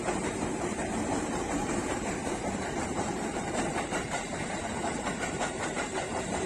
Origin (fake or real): fake